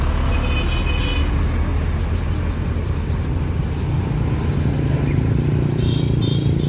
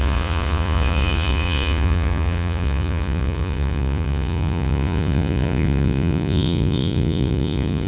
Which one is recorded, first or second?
first